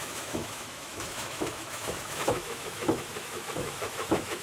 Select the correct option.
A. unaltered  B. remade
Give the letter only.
B